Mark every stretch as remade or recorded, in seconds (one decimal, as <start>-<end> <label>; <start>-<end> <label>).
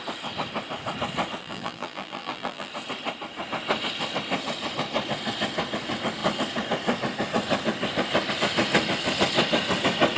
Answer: 0.0-1.4 recorded; 1.4-2.7 remade; 2.7-10.2 recorded